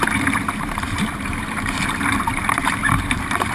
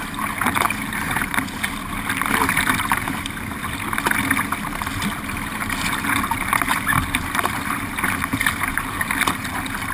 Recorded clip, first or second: second